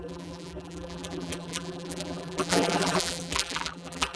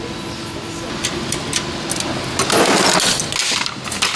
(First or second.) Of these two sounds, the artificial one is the first